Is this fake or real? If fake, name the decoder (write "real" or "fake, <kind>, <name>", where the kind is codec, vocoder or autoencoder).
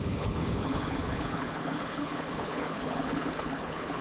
fake, codec, HILCodec